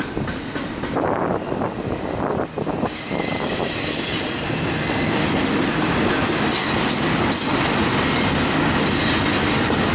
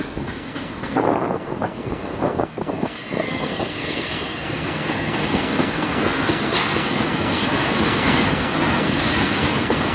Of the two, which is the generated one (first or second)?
second